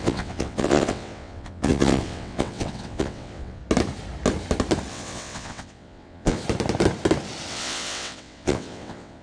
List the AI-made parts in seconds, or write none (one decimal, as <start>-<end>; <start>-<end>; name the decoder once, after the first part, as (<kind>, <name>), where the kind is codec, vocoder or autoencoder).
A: 0.0-3.6 (vocoder, WaveNeXt); 4.9-6.4; 7.5-9.2